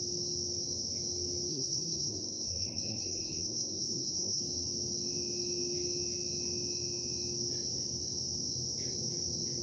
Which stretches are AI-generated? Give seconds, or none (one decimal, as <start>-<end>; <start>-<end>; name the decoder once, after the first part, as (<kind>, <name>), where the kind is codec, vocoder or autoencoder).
1.5-4.4 (codec, SNAC)